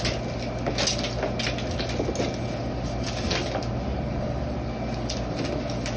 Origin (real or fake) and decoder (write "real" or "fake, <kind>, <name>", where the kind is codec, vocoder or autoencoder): real